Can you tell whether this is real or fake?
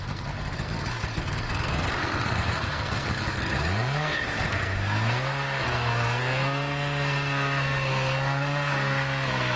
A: fake